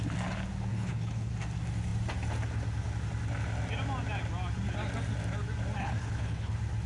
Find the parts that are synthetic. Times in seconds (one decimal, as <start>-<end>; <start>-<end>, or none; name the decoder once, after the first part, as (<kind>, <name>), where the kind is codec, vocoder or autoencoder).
0.7-1.3 (codec, HILCodec); 5.8-6.5